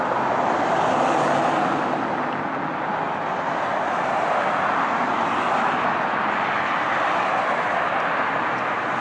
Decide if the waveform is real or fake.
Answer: real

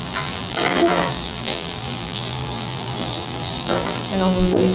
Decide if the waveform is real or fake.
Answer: fake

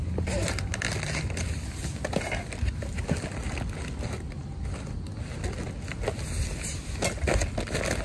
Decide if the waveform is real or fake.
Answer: real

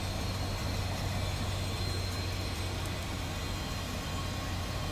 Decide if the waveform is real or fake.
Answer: real